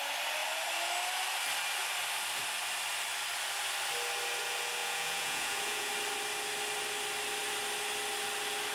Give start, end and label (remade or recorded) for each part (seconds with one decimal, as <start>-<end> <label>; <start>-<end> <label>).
0.0-4.8 recorded; 4.8-5.9 remade; 5.9-8.7 recorded

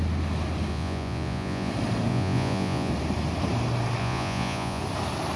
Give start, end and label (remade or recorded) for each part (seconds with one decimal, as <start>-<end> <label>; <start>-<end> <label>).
0.0-0.7 recorded; 0.7-1.7 remade; 1.7-2.1 recorded; 2.1-2.9 remade; 2.9-4.0 recorded; 4.0-4.8 remade; 4.8-5.4 recorded

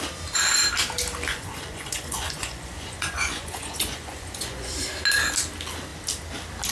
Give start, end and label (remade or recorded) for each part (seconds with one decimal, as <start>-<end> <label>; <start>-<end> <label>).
0.0-1.3 recorded; 1.3-4.7 remade; 4.7-6.7 recorded

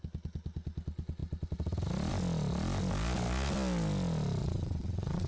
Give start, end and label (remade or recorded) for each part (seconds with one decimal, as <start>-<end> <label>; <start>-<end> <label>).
0.0-4.4 recorded; 4.4-5.3 remade

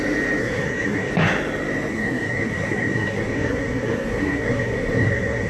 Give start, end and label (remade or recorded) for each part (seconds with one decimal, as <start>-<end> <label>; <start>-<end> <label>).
0.0-0.4 recorded; 0.4-1.1 remade; 1.1-1.9 recorded; 1.9-5.5 remade

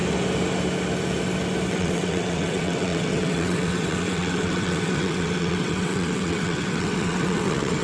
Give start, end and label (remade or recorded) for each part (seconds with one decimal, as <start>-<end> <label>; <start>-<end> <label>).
0.0-1.7 recorded; 1.7-7.8 remade

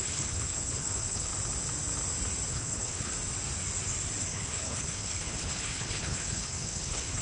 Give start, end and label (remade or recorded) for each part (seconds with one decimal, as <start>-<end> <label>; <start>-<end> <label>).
0.0-1.3 remade; 1.3-2.5 recorded; 2.5-3.1 remade; 3.1-4.2 recorded; 4.2-7.2 remade

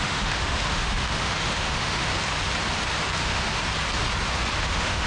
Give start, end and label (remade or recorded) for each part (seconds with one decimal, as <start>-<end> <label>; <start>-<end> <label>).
0.0-2.1 remade; 2.1-3.2 recorded; 3.2-3.6 remade; 3.6-4.6 recorded; 4.6-5.1 remade